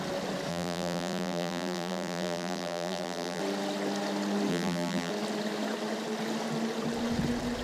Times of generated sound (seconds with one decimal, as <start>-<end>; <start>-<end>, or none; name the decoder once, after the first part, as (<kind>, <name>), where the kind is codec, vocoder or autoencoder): 0.5-3.4 (vocoder, BigVGAN v2); 4.5-5.1